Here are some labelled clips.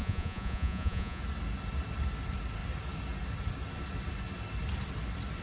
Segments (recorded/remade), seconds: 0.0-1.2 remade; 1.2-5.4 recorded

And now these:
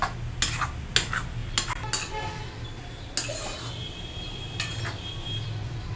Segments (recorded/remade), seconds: 0.0-6.0 recorded

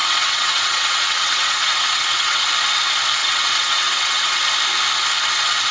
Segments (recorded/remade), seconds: 0.0-2.4 remade; 2.4-3.2 recorded; 3.2-4.4 remade; 4.4-5.7 recorded

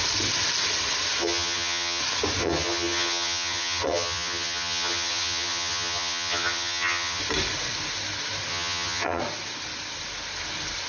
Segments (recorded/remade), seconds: 0.0-1.2 recorded; 1.2-2.0 remade; 2.0-2.4 recorded; 2.4-7.2 remade; 7.2-8.5 recorded; 8.5-9.2 remade; 9.2-10.9 recorded

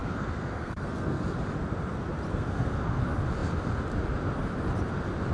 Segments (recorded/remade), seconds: 0.0-1.2 remade; 1.2-2.3 recorded; 2.3-3.0 remade; 3.0-5.3 recorded

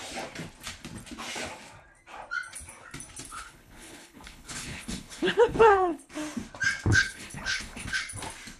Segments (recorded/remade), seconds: 0.0-3.3 recorded; 3.3-6.1 remade; 6.1-6.9 recorded; 6.9-8.0 remade; 8.0-8.6 recorded

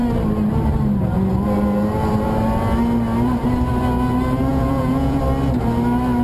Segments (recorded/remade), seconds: 0.0-4.5 recorded; 4.5-5.2 remade; 5.2-6.2 recorded

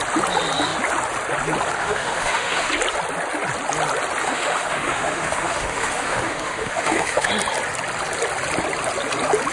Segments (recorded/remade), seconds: 0.0-1.8 recorded; 1.8-2.7 remade; 2.7-4.2 recorded; 4.2-7.3 remade; 7.3-9.5 recorded